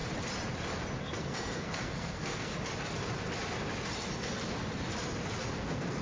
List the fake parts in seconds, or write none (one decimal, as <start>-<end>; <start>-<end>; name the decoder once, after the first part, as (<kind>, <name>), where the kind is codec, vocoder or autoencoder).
1.0-2.5 (codec, SNAC); 5.6-6.0